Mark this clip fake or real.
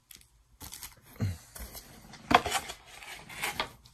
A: real